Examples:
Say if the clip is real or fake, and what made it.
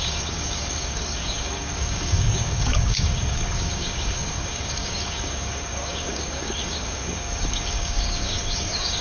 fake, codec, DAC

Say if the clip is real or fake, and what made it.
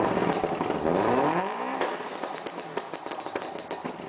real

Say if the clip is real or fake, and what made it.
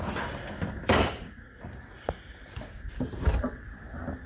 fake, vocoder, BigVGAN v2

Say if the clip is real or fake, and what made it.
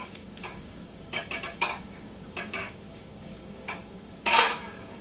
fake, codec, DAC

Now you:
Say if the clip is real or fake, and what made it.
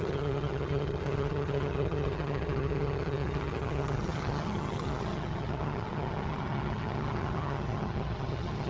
fake, vocoder, HiFi-GAN